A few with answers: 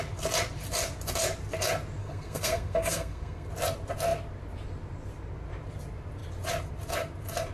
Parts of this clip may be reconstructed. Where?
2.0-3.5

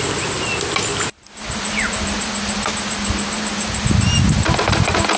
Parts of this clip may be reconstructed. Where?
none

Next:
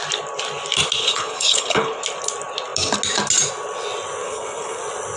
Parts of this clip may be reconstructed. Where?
1.0-2.0; 4.2-4.8

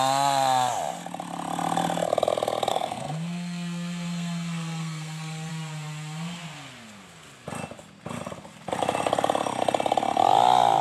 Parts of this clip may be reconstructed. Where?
2.7-5.5

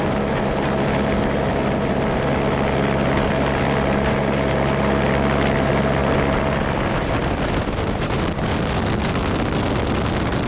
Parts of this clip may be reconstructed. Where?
none

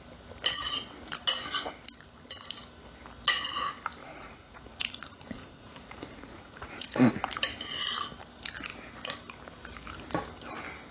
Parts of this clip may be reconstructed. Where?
4.0-7.1

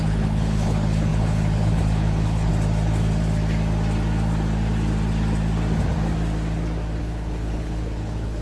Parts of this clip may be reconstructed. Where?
0.0-2.5; 7.0-8.4

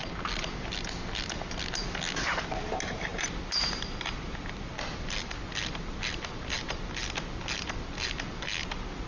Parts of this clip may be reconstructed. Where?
none